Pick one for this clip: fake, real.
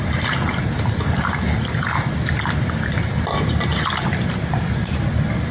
real